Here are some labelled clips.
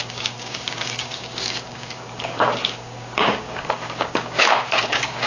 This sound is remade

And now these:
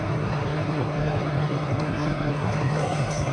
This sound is remade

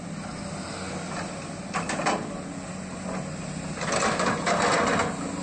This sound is recorded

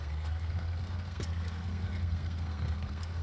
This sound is remade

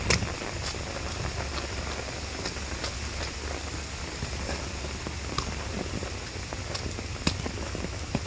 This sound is recorded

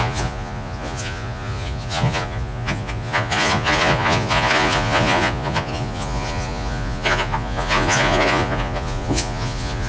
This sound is remade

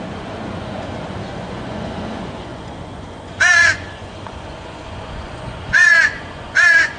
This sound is remade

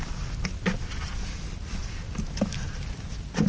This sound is recorded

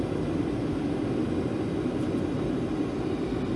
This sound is recorded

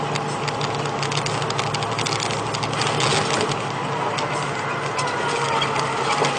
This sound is recorded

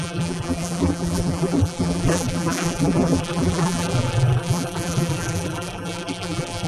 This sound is remade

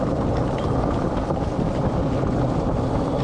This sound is recorded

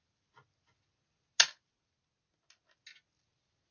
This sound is recorded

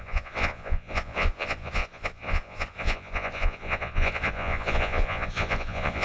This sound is remade